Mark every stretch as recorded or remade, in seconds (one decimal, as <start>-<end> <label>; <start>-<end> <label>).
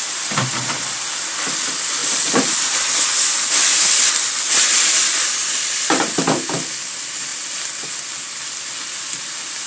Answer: 0.0-2.0 recorded; 2.0-4.1 remade; 4.1-5.4 recorded; 5.4-6.1 remade; 6.1-9.7 recorded